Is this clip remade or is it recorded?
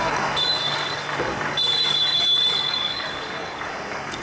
remade